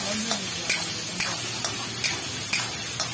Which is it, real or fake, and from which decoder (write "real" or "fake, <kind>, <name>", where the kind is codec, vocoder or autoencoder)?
real